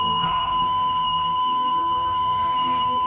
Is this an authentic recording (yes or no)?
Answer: no